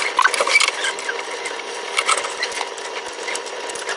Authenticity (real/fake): real